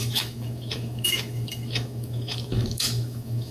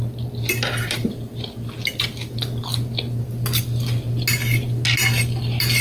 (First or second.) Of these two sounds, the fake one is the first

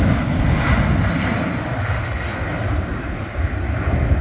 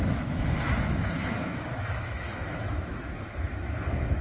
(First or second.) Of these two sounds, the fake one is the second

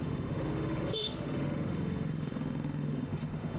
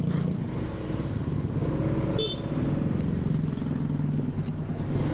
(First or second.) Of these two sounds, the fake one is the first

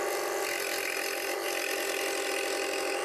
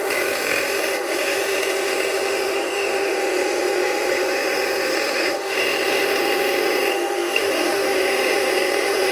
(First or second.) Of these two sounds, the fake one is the second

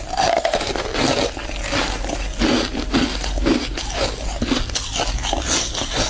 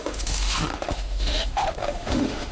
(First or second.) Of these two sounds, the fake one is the second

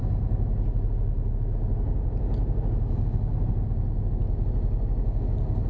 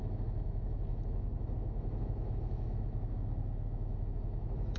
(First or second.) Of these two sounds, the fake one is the second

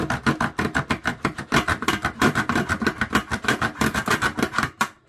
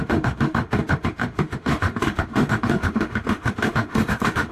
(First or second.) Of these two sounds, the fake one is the second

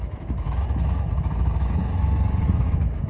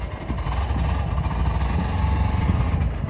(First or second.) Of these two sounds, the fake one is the first